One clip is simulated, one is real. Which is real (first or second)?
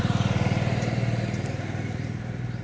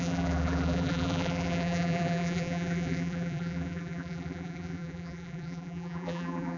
first